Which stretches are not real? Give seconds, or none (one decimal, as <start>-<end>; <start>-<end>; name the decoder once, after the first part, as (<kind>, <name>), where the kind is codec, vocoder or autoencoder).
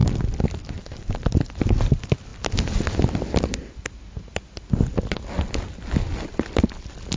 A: none